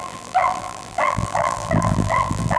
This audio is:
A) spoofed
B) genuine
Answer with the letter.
A